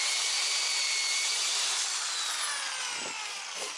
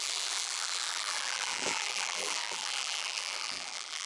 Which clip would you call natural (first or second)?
first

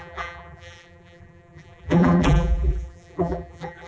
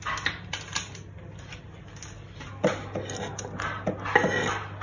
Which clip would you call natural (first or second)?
second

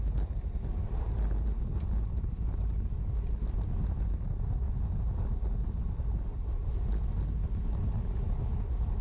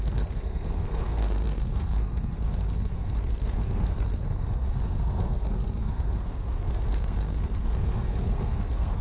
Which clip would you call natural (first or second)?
first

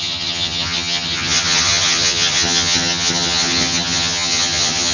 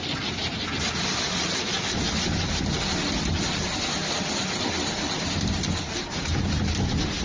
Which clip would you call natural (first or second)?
second